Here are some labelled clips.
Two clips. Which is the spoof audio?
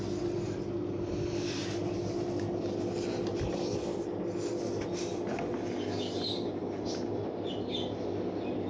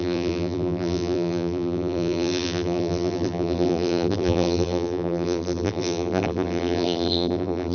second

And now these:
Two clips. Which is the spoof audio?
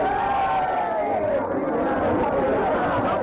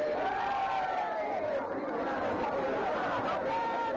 second